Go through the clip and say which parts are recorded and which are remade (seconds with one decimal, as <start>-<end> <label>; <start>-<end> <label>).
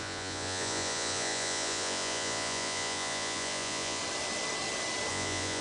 0.0-4.0 remade; 4.0-5.1 recorded; 5.1-5.6 remade